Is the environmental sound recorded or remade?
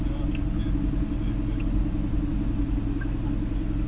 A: recorded